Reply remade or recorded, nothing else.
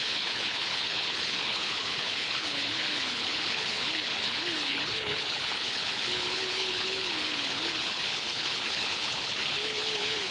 remade